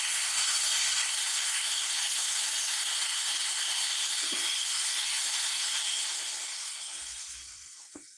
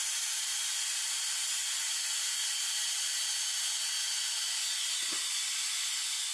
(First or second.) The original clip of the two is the second